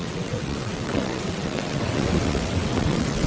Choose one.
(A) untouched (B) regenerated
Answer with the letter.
B